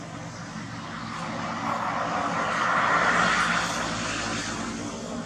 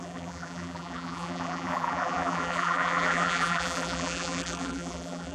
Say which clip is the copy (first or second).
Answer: second